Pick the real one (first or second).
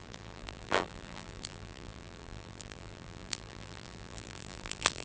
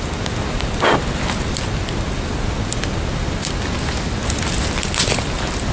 second